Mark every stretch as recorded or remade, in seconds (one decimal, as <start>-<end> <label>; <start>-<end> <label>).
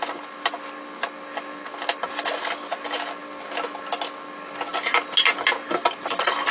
0.0-6.5 recorded